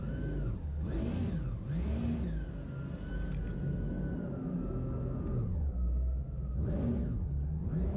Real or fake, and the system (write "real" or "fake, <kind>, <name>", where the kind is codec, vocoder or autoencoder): real